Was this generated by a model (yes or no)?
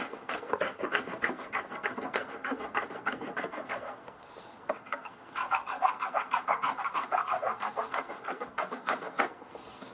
yes